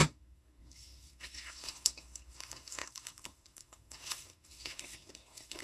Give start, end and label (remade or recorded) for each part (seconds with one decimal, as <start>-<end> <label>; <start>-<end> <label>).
0.0-5.6 remade